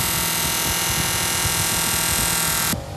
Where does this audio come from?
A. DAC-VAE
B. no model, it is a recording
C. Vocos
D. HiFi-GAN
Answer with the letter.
B